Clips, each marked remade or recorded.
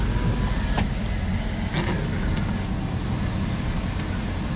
recorded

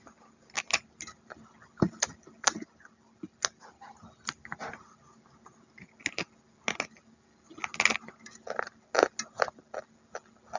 recorded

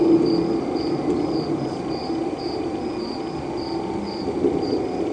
recorded